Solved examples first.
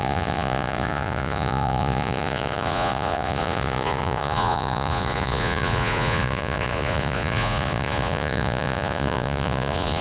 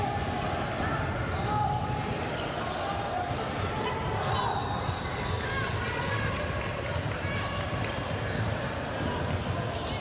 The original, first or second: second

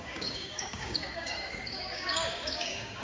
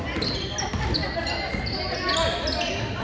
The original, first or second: second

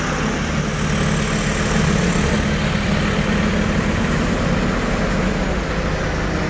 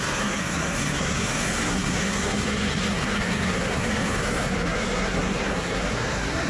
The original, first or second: first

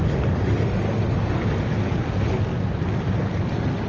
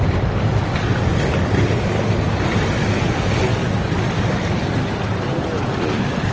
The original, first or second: first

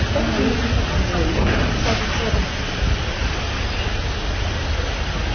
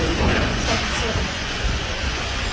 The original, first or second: first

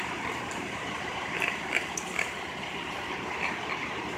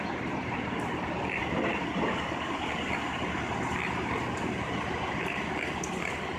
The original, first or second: second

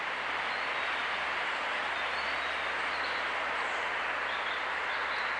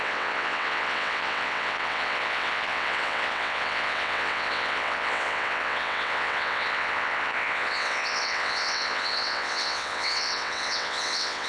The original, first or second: first